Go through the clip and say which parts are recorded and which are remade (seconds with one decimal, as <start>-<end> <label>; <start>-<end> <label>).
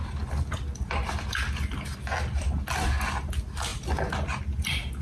0.0-5.0 recorded